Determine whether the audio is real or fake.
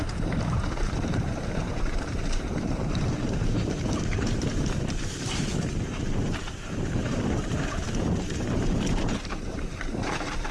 fake